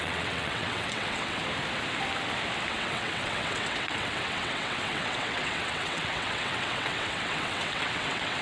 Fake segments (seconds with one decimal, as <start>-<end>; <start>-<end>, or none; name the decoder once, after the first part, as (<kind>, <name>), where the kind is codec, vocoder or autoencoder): 0.0-1.4 (vocoder, WaveNeXt); 2.7-8.4